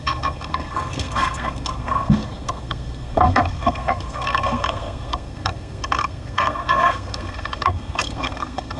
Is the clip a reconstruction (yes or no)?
yes